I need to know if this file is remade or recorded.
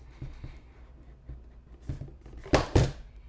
recorded